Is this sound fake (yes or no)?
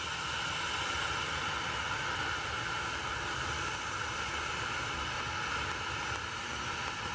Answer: no